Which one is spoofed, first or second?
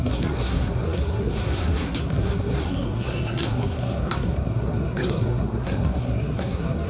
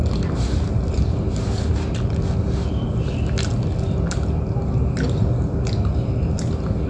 first